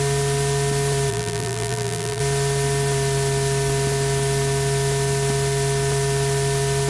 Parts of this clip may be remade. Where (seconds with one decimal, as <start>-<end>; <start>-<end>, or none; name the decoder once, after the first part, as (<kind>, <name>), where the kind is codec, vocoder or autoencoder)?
1.1-2.2 (vocoder, BigVGAN v2)